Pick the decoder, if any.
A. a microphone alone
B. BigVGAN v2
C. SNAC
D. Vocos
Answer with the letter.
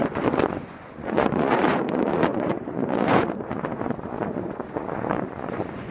D